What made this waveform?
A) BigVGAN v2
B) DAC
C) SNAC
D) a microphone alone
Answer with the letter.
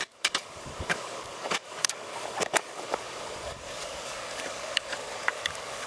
B